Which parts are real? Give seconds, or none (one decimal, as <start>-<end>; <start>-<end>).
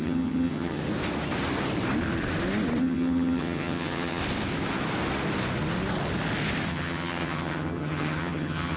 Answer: 0.8-2.8; 4.2-6.7